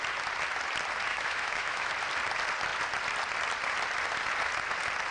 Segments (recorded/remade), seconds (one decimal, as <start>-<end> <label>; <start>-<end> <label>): 0.0-1.1 recorded; 1.1-1.9 remade; 1.9-5.1 recorded